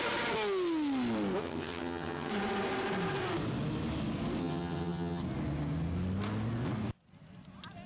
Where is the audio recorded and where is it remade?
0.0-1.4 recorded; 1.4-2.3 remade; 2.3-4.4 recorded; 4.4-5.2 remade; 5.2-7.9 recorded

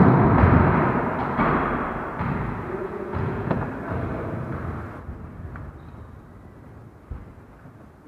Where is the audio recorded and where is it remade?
0.0-2.8 recorded; 2.8-3.6 remade; 3.6-8.1 recorded

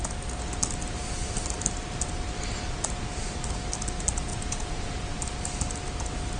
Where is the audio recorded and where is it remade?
0.0-4.3 recorded; 4.3-5.2 remade; 5.2-6.4 recorded

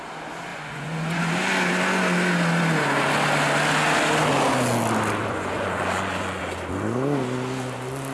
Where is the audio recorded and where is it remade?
0.0-0.5 recorded; 0.5-1.2 remade; 1.2-5.2 recorded; 5.2-6.4 remade; 6.4-8.1 recorded

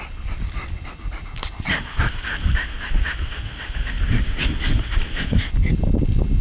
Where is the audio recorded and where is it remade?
0.0-1.7 recorded; 1.7-5.5 remade; 5.5-6.4 recorded

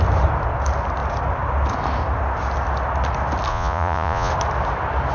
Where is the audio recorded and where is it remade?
0.0-3.5 recorded; 3.5-4.3 remade; 4.3-5.1 recorded

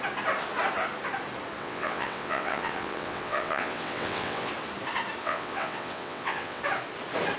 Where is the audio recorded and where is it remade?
0.0-1.6 recorded; 1.6-4.5 remade; 4.5-5.2 recorded; 5.2-6.6 remade; 6.6-7.4 recorded